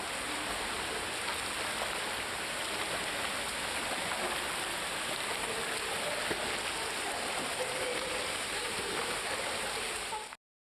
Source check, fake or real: real